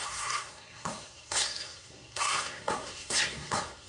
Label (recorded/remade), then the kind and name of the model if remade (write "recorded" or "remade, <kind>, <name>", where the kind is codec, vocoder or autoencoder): remade, codec, SNAC